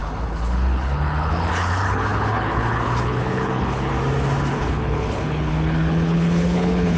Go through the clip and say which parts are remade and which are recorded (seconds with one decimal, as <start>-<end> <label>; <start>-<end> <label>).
0.0-3.9 remade; 3.9-4.5 recorded; 4.5-7.0 remade

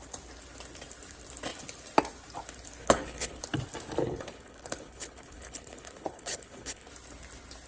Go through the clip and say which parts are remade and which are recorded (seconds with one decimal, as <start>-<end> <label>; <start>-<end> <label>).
0.0-2.8 recorded; 2.8-3.4 remade; 3.4-4.0 recorded; 4.0-6.9 remade; 6.9-7.7 recorded

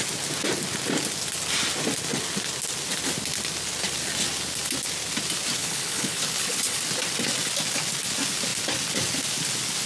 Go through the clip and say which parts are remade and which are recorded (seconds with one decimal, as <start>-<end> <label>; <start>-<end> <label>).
0.0-5.6 recorded; 5.6-6.8 remade; 6.8-9.9 recorded

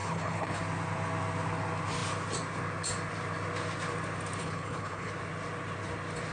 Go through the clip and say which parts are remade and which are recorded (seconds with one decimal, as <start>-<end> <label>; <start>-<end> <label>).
0.0-0.6 remade; 0.6-4.4 recorded; 4.4-5.1 remade; 5.1-6.3 recorded

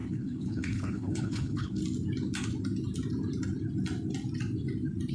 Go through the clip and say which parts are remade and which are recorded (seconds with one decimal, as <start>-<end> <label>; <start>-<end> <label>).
0.0-1.8 remade; 1.8-5.1 recorded

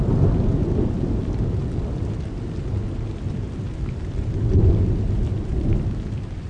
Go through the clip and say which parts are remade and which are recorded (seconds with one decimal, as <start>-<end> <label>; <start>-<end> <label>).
0.0-6.5 recorded

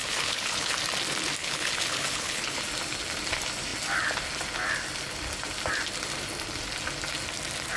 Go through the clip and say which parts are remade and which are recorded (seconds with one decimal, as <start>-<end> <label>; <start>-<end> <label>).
0.0-0.8 remade; 0.8-1.4 recorded; 1.4-2.6 remade; 2.6-7.8 recorded